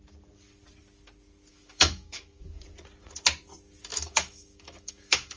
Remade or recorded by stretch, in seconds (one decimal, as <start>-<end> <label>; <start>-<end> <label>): 0.0-1.5 recorded; 1.5-2.6 remade; 2.6-3.9 recorded; 3.9-5.4 remade